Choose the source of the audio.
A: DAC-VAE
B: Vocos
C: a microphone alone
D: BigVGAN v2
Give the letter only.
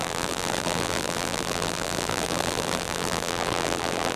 D